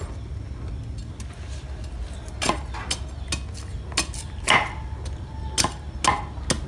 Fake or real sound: real